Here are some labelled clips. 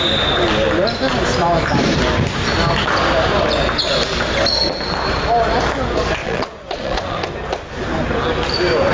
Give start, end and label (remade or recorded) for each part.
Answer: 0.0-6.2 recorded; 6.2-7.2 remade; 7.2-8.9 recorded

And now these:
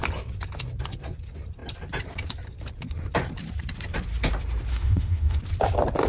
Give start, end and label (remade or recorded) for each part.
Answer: 0.0-4.7 recorded; 4.7-5.4 remade; 5.4-6.1 recorded

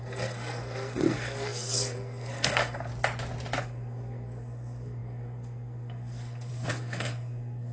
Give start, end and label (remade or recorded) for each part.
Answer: 0.0-2.9 remade; 2.9-3.6 recorded; 3.6-7.7 remade

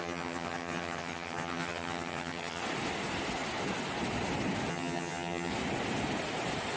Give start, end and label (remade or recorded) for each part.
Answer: 0.0-2.6 remade; 2.6-4.7 recorded; 4.7-5.5 remade; 5.5-6.8 recorded

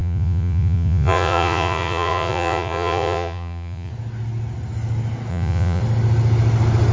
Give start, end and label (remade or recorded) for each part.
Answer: 0.0-3.9 remade; 3.9-5.3 recorded; 5.3-5.8 remade; 5.8-6.9 recorded

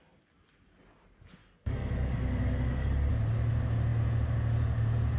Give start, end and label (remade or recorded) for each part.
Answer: 0.0-1.4 recorded; 1.4-3.1 remade; 3.1-5.2 recorded

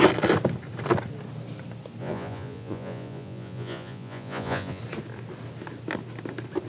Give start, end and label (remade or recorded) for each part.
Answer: 0.0-2.0 recorded; 2.0-4.8 remade; 4.8-6.7 recorded